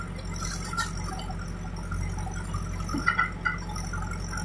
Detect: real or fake real